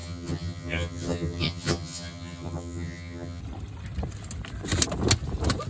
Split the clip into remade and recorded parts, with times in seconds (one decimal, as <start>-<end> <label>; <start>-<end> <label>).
0.0-3.4 remade; 3.4-5.7 recorded